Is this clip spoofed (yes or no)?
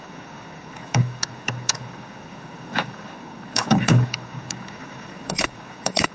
yes